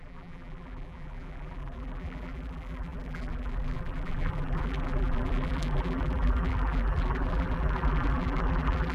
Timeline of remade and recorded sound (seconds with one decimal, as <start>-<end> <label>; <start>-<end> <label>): 0.0-8.9 remade